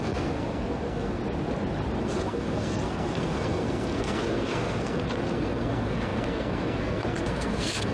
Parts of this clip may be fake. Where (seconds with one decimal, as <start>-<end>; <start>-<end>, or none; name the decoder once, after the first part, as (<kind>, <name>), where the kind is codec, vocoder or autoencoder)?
0.0-1.2 (codec, SNAC); 2.0-7.9